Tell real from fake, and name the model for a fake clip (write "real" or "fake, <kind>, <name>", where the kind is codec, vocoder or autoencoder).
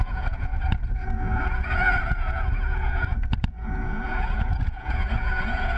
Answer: fake, vocoder, Vocos